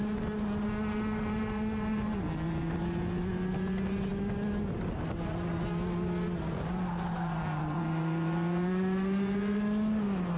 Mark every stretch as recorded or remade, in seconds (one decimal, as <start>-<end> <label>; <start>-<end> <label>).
0.0-10.4 recorded